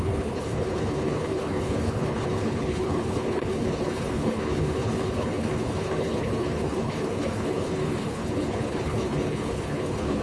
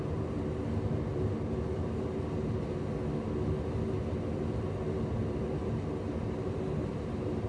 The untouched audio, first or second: second